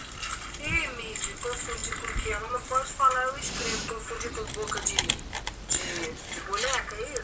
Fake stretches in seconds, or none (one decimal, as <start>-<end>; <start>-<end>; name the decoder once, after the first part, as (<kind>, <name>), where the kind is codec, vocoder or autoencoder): none